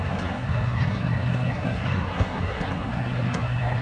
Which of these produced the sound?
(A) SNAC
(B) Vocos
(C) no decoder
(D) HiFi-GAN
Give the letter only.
A